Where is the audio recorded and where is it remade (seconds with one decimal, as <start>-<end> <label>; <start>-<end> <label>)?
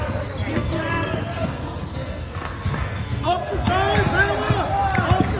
0.0-0.5 recorded; 0.5-3.7 remade; 3.7-5.4 recorded